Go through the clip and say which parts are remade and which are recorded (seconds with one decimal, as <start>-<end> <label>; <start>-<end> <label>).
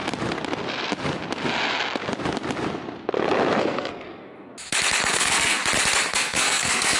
0.0-3.6 recorded; 3.6-4.5 remade; 4.5-5.1 recorded; 5.1-5.6 remade; 5.6-6.1 recorded; 6.1-7.0 remade